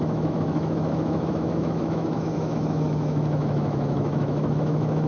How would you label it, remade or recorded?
remade